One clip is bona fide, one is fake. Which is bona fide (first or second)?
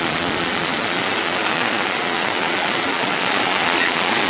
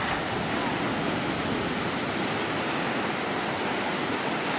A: second